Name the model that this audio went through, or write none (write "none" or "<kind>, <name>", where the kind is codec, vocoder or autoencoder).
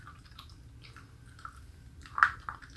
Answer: none